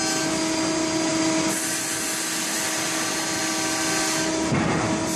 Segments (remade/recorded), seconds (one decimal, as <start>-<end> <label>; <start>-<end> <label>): 0.0-5.2 recorded